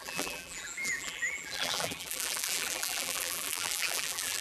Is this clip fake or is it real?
fake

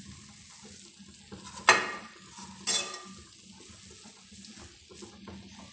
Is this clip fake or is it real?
real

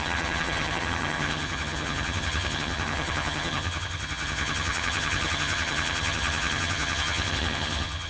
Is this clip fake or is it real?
fake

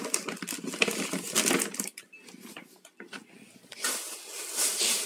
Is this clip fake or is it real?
real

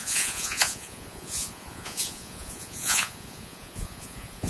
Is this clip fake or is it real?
fake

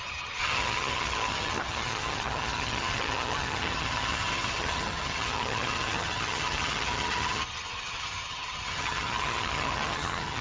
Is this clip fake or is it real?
fake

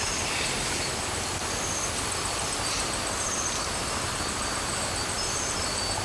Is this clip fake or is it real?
fake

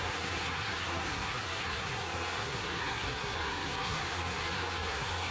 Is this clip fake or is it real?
fake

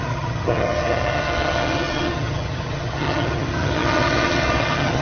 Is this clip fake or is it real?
fake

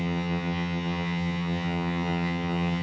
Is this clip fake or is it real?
fake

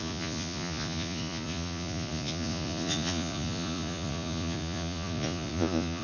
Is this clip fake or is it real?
fake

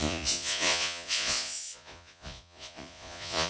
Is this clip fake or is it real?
fake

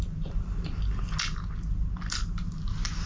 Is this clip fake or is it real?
real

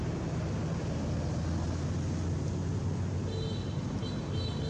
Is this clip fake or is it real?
real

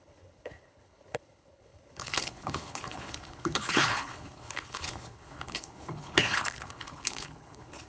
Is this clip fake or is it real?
fake